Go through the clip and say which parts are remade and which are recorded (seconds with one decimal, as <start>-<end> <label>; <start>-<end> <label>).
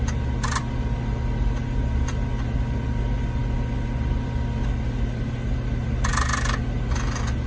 0.0-7.5 recorded